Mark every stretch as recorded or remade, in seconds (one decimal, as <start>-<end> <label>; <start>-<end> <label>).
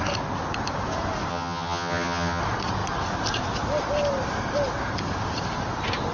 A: 0.0-1.3 recorded; 1.3-2.4 remade; 2.4-6.1 recorded